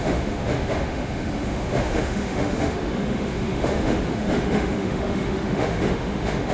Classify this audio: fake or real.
fake